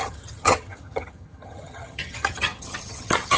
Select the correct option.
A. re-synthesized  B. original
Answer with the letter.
A